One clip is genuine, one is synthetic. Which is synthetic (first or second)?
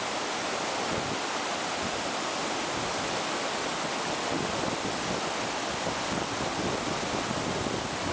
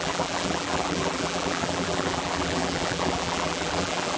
second